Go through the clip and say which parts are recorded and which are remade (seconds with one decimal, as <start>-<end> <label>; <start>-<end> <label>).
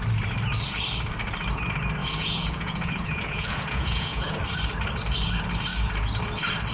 0.0-2.0 recorded; 2.0-4.4 remade; 4.4-6.7 recorded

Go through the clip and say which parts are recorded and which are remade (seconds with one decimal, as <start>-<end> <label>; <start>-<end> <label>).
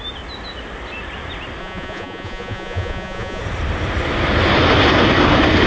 0.0-1.6 recorded; 1.6-3.4 remade; 3.4-5.7 recorded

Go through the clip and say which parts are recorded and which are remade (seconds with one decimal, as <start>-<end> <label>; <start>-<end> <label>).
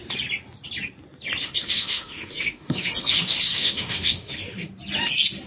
0.0-1.4 recorded; 1.4-4.7 remade; 4.7-5.5 recorded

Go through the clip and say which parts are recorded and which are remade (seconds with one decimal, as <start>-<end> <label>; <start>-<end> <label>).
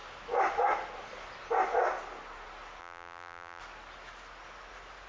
0.0-2.8 recorded; 2.8-3.6 remade; 3.6-5.1 recorded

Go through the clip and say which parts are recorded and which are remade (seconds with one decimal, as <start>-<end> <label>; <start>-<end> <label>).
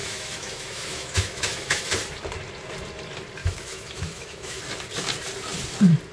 0.0-1.8 remade; 1.8-3.4 recorded; 3.4-4.6 remade; 4.6-6.1 recorded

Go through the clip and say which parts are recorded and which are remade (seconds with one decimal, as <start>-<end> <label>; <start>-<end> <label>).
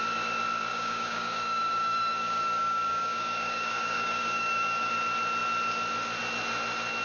0.0-0.7 recorded; 0.7-4.9 remade; 4.9-7.0 recorded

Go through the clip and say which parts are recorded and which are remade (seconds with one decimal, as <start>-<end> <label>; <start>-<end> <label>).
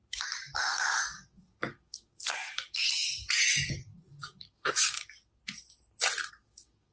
0.0-5.4 remade; 5.4-6.3 recorded; 6.3-6.9 remade